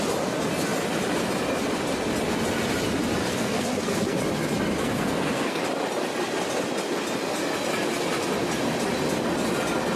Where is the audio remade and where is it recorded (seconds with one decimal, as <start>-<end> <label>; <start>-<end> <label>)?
0.0-3.2 recorded; 3.2-4.2 remade; 4.2-4.8 recorded; 4.8-5.6 remade; 5.6-10.0 recorded